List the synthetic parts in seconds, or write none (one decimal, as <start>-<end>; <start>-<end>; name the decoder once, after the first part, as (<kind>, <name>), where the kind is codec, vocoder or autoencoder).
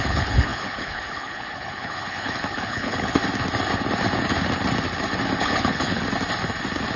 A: 0.0-3.2 (codec, HILCodec); 5.4-6.0